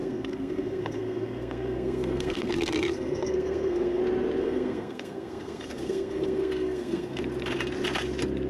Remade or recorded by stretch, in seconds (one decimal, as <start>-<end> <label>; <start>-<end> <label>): 0.0-4.0 remade; 4.0-4.4 recorded; 4.4-7.2 remade; 7.2-8.5 recorded